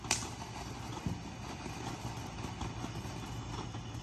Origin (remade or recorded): recorded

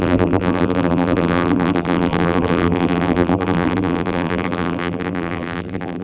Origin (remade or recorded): remade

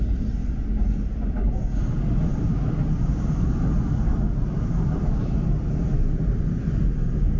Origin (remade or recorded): recorded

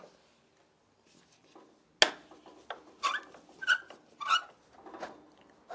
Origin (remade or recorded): recorded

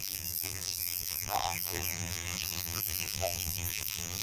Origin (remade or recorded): remade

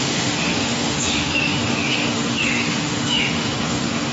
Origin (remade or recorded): remade